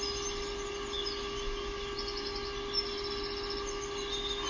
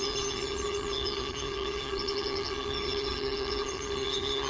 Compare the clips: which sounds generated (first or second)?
second